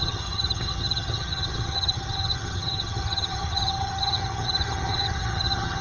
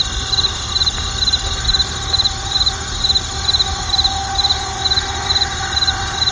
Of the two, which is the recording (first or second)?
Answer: second